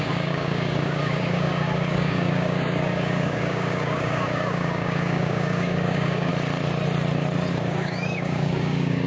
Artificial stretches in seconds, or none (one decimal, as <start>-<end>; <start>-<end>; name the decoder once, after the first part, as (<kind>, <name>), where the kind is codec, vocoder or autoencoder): 0.0-6.3 (codec, DAC); 7.5-9.1